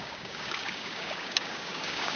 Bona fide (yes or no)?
no